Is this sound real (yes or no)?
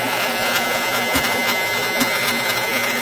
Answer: no